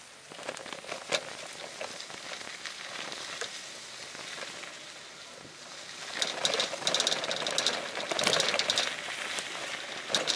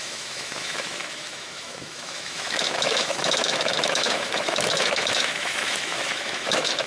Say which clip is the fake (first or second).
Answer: second